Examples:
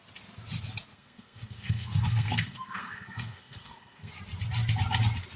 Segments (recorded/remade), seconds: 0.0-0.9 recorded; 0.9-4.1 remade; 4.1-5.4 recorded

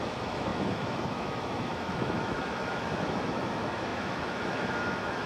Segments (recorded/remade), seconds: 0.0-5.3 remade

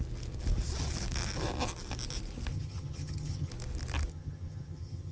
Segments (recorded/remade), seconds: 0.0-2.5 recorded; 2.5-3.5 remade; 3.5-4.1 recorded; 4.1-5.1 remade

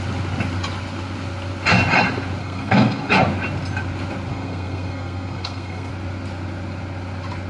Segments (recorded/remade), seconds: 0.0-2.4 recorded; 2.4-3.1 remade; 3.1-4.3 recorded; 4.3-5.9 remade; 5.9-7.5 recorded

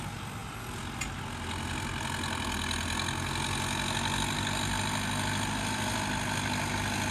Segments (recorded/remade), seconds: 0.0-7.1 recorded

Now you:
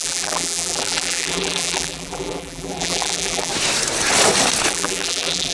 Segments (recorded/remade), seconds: 0.0-3.5 remade; 3.5-4.7 recorded; 4.7-5.5 remade